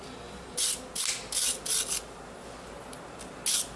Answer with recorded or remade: recorded